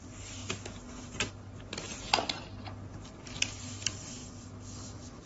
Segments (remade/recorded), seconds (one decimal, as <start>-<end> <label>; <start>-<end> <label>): 0.0-4.2 recorded; 4.2-5.3 remade